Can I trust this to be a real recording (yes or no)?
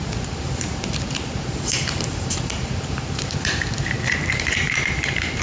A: no